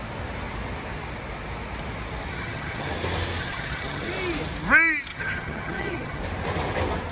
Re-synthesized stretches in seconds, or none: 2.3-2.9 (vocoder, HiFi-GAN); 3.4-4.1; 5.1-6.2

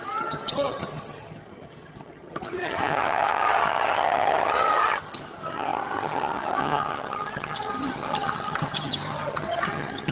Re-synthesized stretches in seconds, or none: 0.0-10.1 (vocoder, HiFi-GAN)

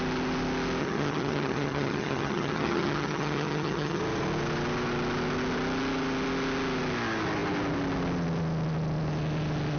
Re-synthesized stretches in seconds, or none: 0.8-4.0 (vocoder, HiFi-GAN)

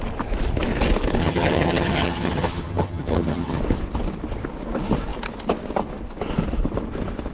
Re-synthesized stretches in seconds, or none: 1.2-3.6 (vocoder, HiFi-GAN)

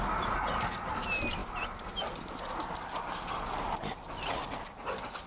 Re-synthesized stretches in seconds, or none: none

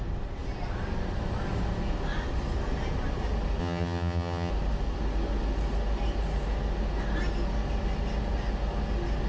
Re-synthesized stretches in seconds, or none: 3.6-4.5 (vocoder, HiFi-GAN)

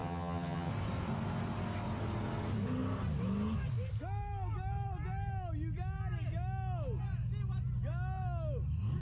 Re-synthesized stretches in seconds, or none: 0.0-0.7 (vocoder, HiFi-GAN)

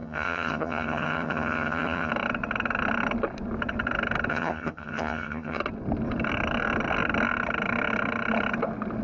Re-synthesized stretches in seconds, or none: 0.0-2.1 (vocoder, HiFi-GAN); 4.3-5.6